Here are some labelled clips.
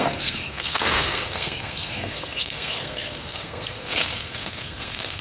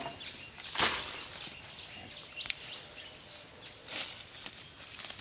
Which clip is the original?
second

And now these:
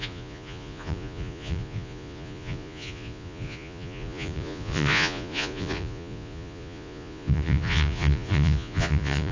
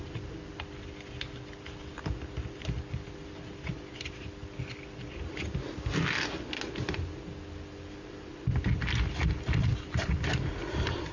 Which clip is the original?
second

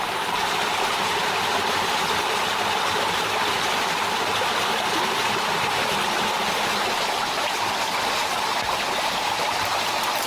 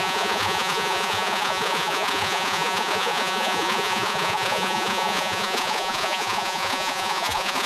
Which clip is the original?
first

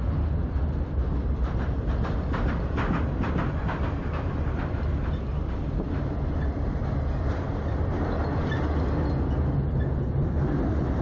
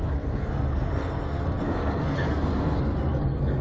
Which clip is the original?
first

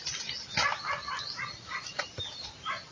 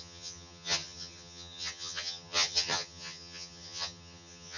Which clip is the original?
first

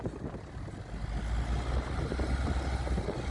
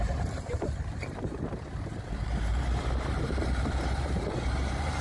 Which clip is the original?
first